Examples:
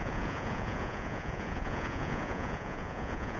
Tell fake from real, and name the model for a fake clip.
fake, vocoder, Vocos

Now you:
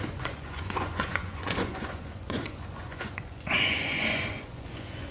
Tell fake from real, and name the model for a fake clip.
fake, vocoder, Vocos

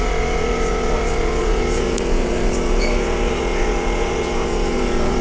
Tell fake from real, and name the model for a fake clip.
fake, vocoder, Vocos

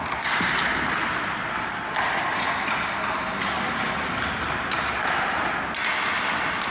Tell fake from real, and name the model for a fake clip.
real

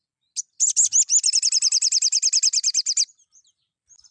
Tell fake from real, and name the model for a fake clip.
real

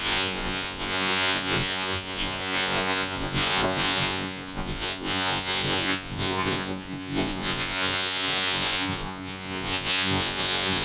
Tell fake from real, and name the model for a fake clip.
fake, vocoder, Vocos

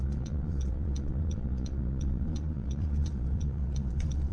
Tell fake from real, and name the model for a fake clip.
fake, vocoder, Vocos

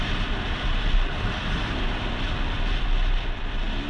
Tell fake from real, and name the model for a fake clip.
real